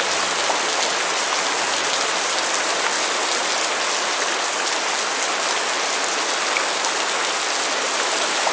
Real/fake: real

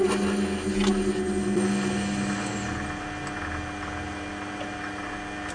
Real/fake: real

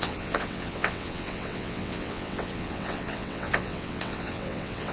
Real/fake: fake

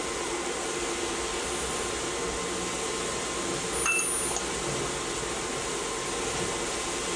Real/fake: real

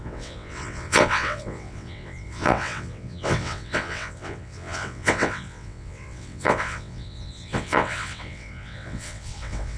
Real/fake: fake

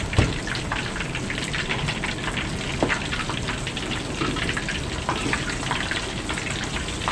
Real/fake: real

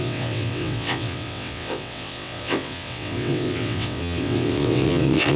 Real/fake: fake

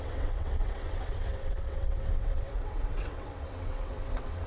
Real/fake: fake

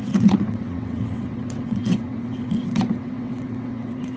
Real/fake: fake